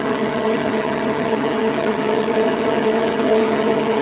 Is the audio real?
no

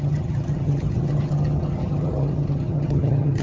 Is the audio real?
no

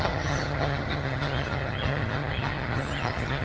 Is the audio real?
no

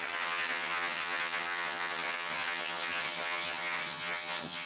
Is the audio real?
no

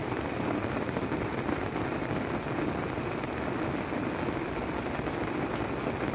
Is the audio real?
yes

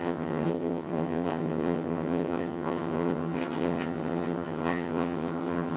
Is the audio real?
no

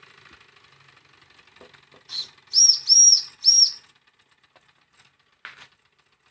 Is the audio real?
yes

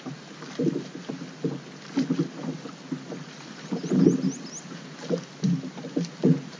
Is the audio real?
yes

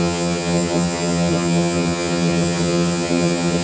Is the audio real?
no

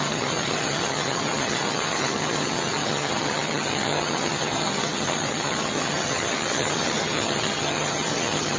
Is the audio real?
no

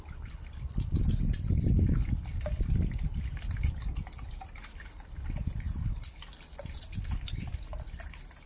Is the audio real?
yes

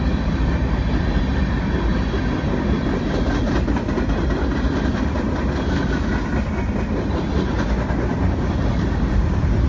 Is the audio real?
yes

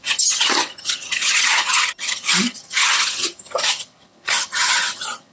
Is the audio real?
no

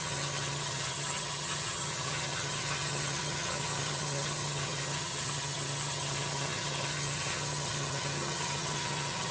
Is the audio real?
no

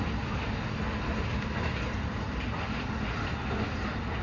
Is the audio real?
yes